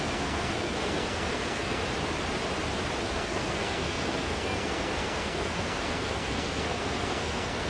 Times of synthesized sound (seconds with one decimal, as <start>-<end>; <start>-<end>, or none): 0.0-1.8; 3.0-7.7